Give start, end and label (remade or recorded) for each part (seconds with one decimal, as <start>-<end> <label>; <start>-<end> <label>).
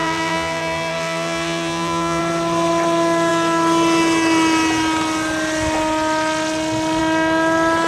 0.0-2.2 remade; 2.2-7.9 recorded